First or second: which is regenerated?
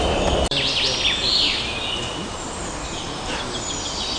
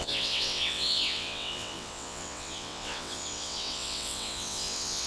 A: second